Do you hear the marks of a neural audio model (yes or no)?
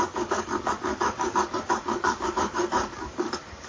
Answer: yes